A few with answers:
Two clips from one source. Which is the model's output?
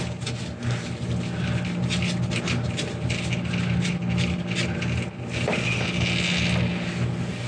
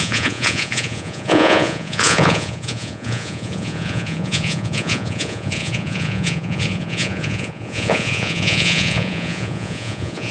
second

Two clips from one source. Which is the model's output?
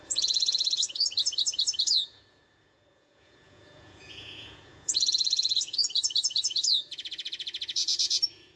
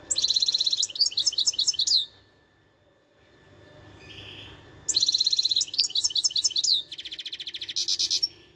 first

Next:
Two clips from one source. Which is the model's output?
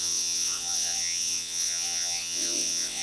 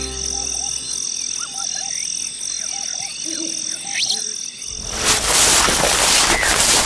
first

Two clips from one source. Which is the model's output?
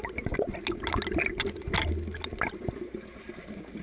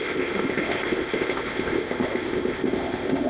second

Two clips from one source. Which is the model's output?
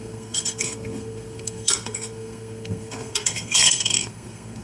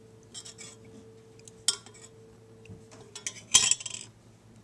first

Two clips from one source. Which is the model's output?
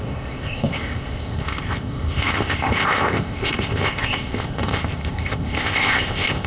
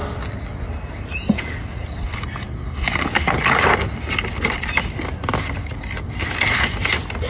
first